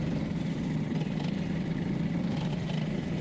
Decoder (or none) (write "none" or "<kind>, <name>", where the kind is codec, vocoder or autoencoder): none